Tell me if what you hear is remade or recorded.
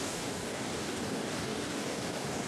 remade